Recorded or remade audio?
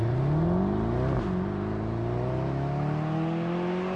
recorded